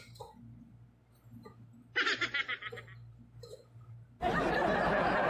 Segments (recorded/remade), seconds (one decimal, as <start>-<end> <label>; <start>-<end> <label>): 0.0-5.3 recorded

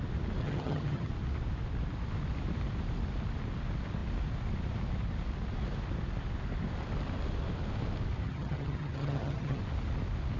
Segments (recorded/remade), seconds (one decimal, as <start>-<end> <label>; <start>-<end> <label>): 0.0-0.4 recorded; 0.4-1.1 remade; 1.1-8.2 recorded; 8.2-9.6 remade; 9.6-10.4 recorded

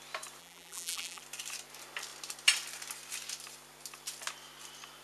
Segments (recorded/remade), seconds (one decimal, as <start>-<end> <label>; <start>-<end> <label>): 0.0-0.4 recorded; 0.4-1.2 remade; 1.2-5.0 recorded

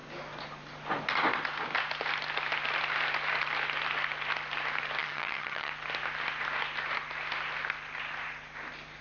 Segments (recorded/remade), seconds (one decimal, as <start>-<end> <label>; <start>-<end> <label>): 0.0-5.0 recorded; 5.0-5.7 remade; 5.7-9.0 recorded

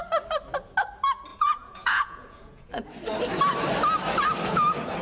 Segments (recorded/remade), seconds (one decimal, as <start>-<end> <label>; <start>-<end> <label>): 0.0-1.3 recorded; 1.3-2.7 remade; 2.7-5.0 recorded

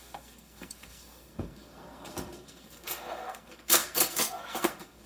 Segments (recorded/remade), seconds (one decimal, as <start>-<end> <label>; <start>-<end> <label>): 0.0-5.1 remade

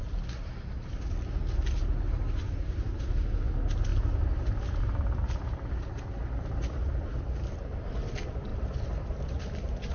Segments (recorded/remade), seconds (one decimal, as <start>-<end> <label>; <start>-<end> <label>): 0.0-9.9 recorded